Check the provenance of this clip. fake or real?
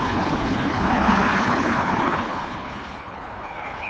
fake